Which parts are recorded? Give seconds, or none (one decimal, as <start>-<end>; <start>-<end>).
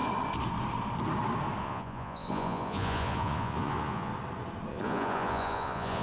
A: 0.0-1.6; 4.1-4.7